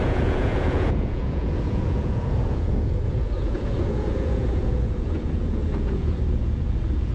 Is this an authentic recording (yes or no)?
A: no